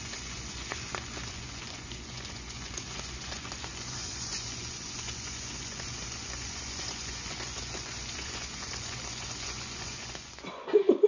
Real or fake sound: fake